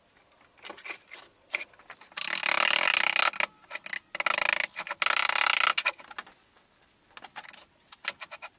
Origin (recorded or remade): recorded